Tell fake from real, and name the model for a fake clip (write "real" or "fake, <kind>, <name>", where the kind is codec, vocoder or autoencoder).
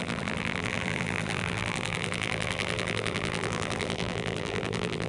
fake, vocoder, BigVGAN v2